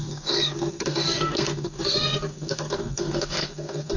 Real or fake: fake